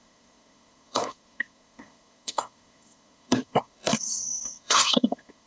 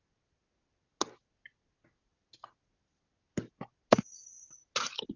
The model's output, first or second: first